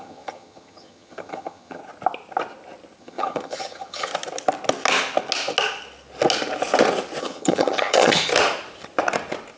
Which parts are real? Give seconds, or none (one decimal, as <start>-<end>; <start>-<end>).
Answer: 1.8-3.0; 4.1-7.2; 8.3-9.6